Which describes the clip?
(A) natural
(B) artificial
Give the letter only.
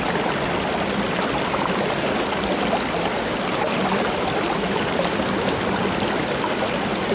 A